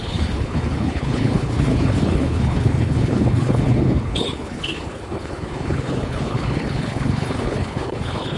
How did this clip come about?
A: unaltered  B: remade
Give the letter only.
B